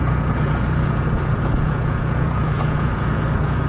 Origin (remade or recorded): remade